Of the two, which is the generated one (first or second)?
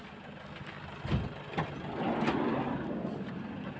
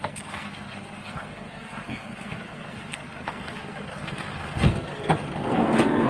second